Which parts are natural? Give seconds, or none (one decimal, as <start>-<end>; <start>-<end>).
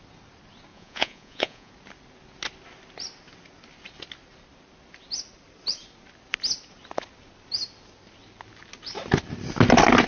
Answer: 0.0-0.7; 1.7-10.1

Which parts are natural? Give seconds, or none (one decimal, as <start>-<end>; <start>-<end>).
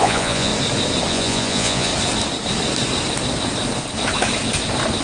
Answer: 0.5-1.1; 1.9-5.0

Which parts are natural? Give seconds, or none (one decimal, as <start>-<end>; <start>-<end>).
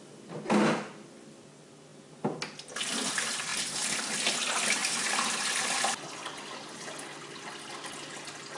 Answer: 0.0-3.5; 4.0-4.8; 5.5-8.6